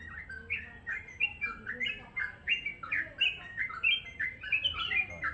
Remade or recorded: remade